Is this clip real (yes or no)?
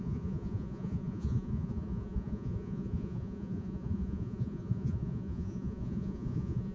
no